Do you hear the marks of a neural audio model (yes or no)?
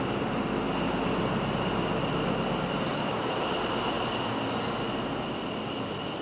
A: no